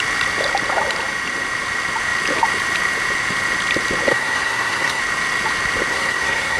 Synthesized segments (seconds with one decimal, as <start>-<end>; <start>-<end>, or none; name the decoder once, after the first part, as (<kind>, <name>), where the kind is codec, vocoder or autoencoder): 4.1-5.0 (codec, SNAC); 5.9-6.6